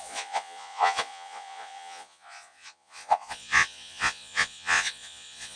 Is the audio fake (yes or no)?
yes